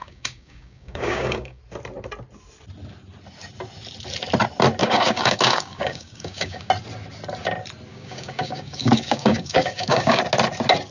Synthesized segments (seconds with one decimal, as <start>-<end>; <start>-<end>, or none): 0.0-1.6; 4.8-6.7; 7.9-10.2

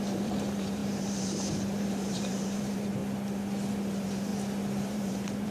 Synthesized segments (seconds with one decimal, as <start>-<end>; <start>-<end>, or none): 0.0-3.0; 3.7-4.3; 4.8-5.5